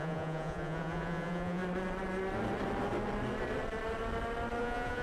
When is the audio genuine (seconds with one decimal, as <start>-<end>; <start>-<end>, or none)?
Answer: 1.6-4.6